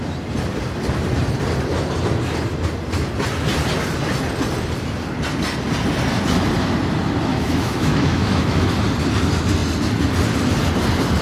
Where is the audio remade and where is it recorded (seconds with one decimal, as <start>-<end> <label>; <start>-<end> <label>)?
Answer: 0.0-7.3 recorded; 7.3-8.7 remade; 8.7-11.2 recorded